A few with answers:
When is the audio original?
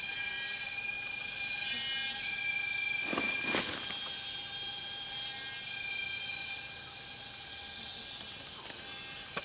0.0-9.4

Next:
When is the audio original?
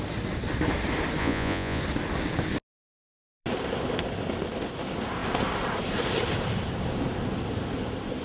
0.0-1.2; 1.8-8.2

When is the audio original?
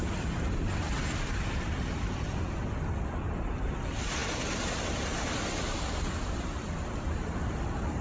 none